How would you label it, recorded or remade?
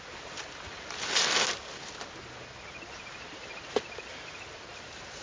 recorded